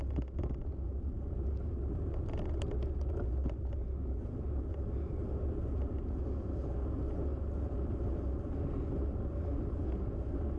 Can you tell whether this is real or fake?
real